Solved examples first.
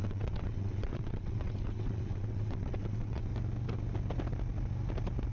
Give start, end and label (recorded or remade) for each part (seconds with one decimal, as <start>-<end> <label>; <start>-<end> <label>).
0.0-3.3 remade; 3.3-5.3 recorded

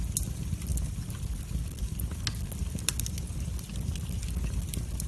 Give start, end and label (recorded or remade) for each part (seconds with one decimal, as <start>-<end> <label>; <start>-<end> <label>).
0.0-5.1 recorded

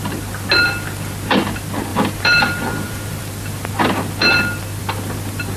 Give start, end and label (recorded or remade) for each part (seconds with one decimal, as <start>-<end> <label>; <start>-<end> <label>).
0.0-1.9 recorded; 1.9-3.2 remade; 3.2-5.6 recorded